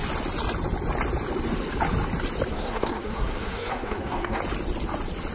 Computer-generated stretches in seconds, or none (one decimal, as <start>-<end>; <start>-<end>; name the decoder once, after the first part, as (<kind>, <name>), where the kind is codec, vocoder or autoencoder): 2.5-4.4 (codec, SNAC)